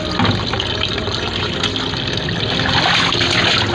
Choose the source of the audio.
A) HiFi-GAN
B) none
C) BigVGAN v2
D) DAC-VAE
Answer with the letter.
B